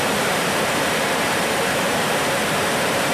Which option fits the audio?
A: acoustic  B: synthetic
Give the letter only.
B